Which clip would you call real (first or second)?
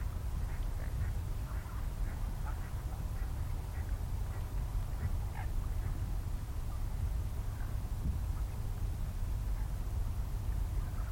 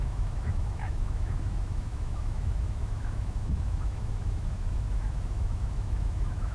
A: first